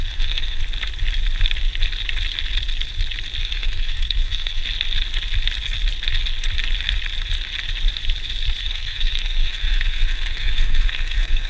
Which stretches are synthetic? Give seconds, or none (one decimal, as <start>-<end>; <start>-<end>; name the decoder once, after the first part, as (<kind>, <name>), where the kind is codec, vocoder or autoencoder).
0.0-0.6 (codec, SNAC); 3.4-4.6; 8.6-11.5